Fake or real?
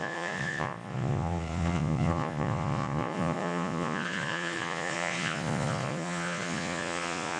fake